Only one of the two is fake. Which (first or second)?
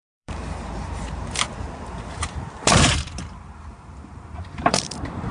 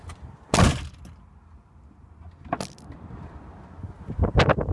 first